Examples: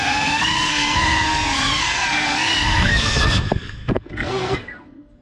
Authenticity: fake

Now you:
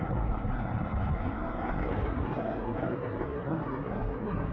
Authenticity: fake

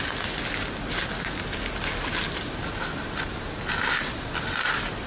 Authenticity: real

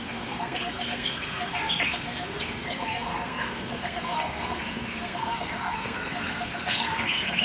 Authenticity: fake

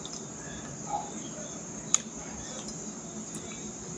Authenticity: real